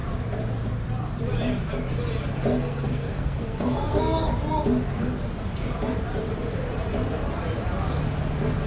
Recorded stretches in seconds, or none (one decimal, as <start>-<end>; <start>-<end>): 0.0-2.5; 4.3-8.7